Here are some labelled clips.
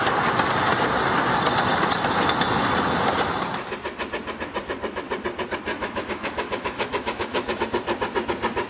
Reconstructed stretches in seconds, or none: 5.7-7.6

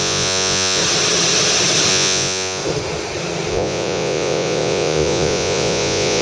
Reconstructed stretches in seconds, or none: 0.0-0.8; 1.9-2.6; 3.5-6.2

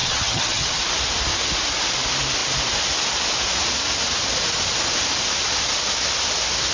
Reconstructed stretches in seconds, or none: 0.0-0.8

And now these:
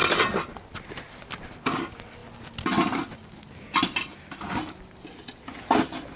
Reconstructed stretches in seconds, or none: none

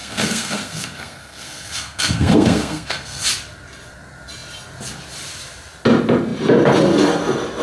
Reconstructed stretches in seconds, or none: 0.0-3.3

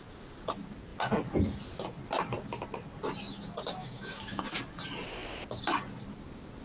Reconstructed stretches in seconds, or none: 3.8-4.4